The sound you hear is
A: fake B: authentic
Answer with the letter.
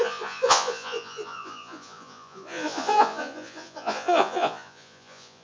A